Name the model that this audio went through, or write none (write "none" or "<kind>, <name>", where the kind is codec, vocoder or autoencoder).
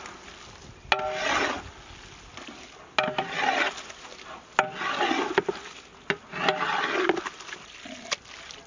none